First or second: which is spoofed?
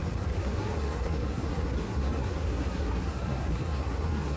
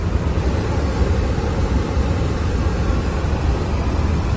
first